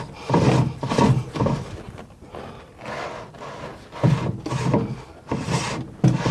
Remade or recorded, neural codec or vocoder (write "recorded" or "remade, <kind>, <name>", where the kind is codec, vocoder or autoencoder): recorded